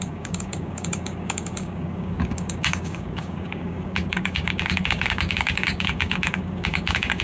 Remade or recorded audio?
remade